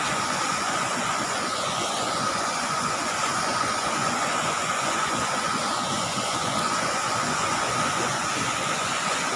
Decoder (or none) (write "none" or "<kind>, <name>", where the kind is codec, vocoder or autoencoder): vocoder, Vocos